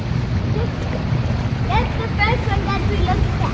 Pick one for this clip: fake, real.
real